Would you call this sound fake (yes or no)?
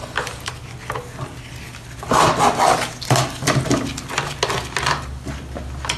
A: no